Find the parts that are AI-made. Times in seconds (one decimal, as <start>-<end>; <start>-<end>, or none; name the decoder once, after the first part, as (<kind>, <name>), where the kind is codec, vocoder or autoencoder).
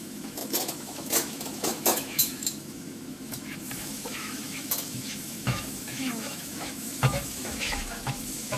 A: 0.0-8.6 (autoencoder, DAC-VAE)